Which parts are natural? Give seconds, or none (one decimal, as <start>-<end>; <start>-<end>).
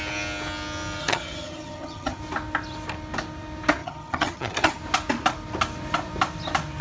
0.0-1.0; 2.2-3.8; 4.8-6.8